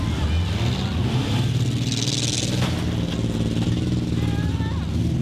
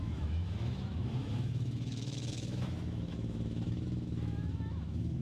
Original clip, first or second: first